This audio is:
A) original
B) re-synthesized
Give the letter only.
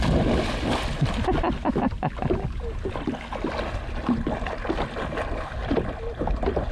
A